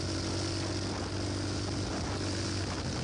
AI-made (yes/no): no